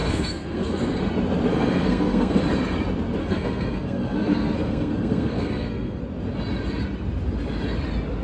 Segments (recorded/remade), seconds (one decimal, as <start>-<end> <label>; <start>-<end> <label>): 0.0-1.0 remade; 1.0-1.5 recorded; 1.5-2.4 remade; 2.4-3.2 recorded; 3.2-6.0 remade; 6.0-8.2 recorded